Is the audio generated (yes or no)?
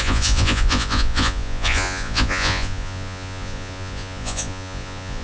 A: yes